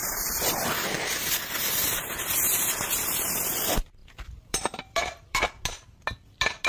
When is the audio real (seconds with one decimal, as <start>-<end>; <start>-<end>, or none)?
1.0-4.0; 5.6-6.7